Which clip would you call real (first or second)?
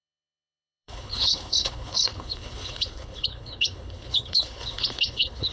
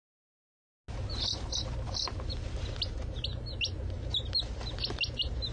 second